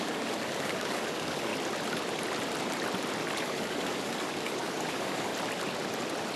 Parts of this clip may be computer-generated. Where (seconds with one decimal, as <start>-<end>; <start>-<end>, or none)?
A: 0.0-1.5; 3.4-5.3